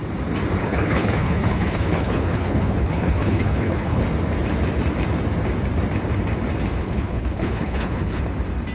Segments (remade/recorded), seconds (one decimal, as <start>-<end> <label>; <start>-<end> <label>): 0.0-0.6 recorded; 0.6-4.0 remade; 4.0-6.8 recorded; 6.8-8.2 remade; 8.2-8.7 recorded